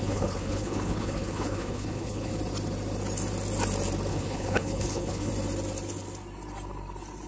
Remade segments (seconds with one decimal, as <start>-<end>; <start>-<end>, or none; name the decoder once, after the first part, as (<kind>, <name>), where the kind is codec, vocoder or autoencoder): 0.0-2.3 (codec, HILCodec); 4.1-5.3